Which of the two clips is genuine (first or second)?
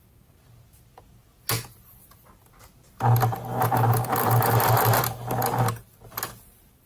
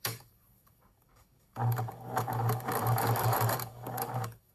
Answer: first